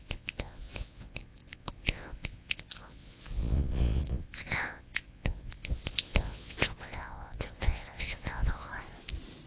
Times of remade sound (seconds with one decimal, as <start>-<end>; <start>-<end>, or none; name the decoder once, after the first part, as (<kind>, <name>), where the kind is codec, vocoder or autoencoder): 0.0-8.7 (vocoder, Vocos)